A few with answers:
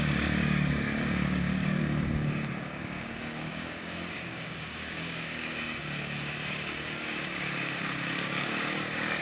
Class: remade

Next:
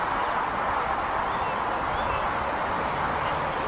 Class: recorded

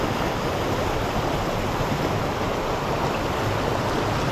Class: recorded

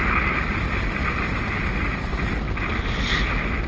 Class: recorded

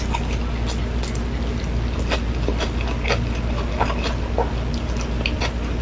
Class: recorded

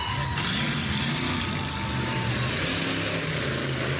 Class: recorded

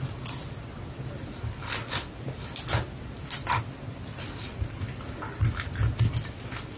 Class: recorded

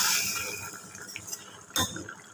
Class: recorded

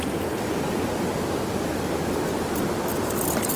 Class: recorded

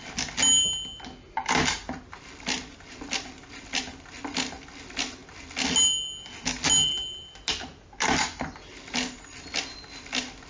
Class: recorded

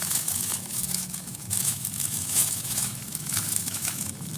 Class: remade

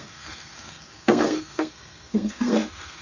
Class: remade